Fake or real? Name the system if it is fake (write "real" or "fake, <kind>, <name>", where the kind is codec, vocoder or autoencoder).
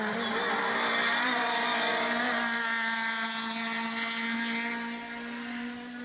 real